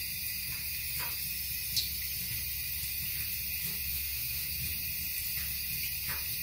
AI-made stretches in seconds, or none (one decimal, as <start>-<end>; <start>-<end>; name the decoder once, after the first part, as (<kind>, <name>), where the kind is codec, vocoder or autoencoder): 3.9-4.5 (autoencoder, DAC-VAE)